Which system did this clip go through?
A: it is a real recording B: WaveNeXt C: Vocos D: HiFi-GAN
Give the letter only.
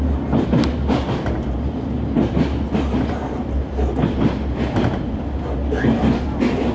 A